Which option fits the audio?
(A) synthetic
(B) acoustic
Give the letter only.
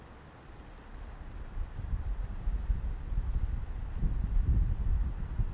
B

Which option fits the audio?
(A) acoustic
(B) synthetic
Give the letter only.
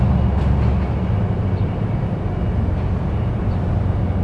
A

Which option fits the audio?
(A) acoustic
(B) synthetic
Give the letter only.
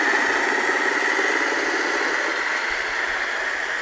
A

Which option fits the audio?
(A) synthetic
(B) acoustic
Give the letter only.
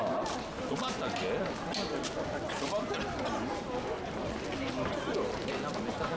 B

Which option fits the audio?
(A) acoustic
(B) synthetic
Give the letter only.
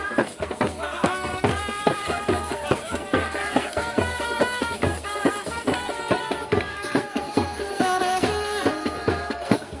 B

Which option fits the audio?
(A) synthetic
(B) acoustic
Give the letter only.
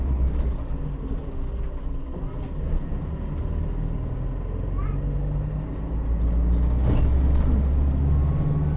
B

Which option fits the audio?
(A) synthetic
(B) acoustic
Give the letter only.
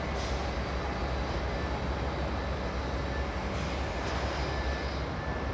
B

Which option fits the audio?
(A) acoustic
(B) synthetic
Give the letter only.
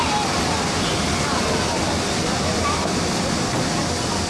A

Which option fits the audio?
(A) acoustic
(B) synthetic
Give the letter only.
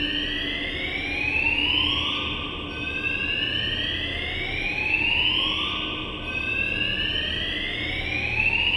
A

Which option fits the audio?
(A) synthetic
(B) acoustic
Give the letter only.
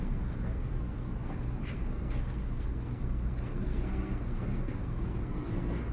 A